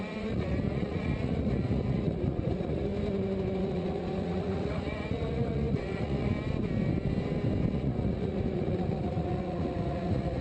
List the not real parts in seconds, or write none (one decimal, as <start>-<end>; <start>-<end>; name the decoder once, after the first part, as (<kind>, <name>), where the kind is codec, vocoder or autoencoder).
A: 0.0-2.9 (vocoder, Vocos); 3.6-6.3; 7.7-10.4